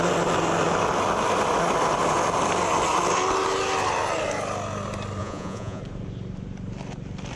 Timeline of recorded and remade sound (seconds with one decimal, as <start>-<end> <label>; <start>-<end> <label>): 0.0-5.2 recorded; 5.2-5.8 remade; 5.8-7.4 recorded